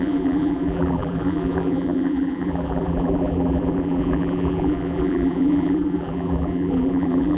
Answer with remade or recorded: remade